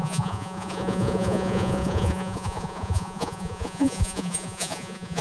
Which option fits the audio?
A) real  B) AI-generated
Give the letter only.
B